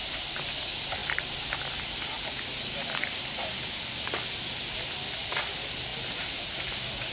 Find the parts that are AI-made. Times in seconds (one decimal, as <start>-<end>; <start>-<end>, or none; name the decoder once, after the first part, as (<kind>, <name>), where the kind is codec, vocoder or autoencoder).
5.9-6.5 (vocoder, BigVGAN v2)